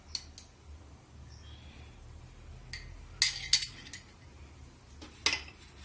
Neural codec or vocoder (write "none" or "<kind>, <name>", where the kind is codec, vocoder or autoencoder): none